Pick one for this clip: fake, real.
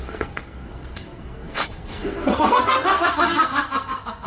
fake